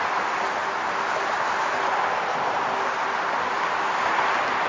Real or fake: real